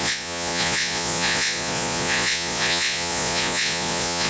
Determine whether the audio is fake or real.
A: fake